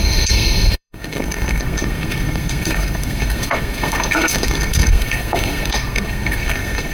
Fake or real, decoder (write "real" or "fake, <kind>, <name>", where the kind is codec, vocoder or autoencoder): fake, codec, SNAC